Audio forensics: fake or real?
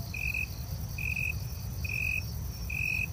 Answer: real